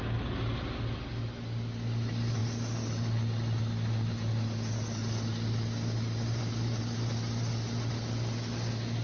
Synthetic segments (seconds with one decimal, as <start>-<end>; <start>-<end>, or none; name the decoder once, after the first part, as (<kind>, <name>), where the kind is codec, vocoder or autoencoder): none